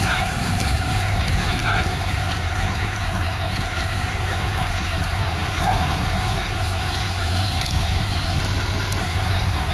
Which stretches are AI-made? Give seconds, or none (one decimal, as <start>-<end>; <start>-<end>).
0.0-8.4; 9.0-9.7

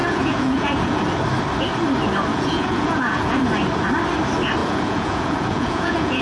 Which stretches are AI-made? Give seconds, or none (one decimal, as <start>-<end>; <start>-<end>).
0.0-1.0; 2.3-3.4; 4.6-6.2